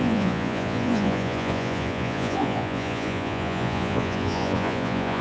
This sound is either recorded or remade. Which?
remade